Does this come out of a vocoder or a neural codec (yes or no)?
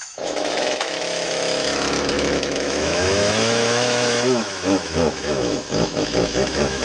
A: yes